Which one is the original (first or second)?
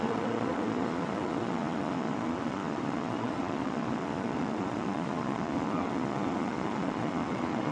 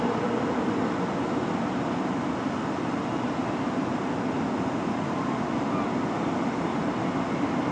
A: second